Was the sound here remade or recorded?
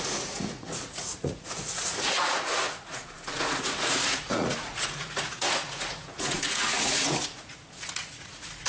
remade